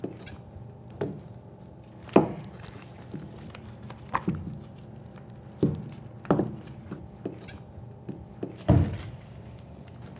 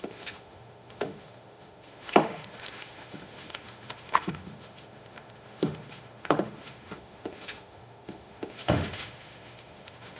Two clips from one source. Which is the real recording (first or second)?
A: first